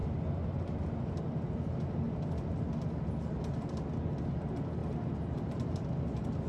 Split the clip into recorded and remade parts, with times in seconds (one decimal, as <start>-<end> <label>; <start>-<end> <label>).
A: 0.0-6.5 recorded